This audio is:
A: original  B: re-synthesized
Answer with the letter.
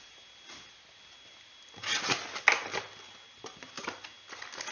A